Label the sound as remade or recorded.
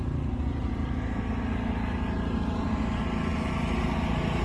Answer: recorded